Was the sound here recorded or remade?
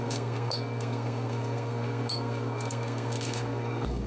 remade